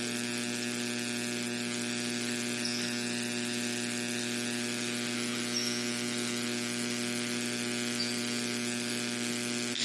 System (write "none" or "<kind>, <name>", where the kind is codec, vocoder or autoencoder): none